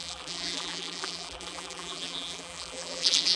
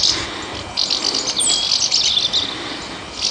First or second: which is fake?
first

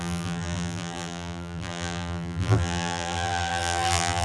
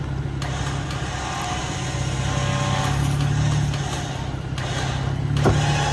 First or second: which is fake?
first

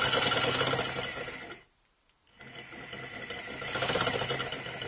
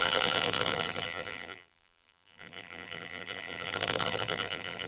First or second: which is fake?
second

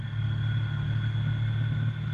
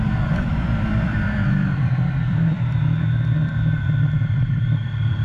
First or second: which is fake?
second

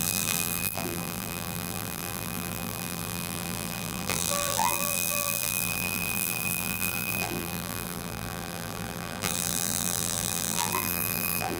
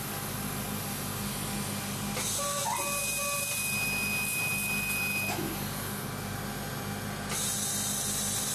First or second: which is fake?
first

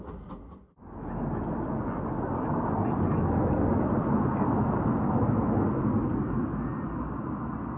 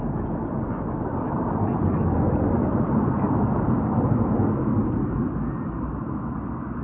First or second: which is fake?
second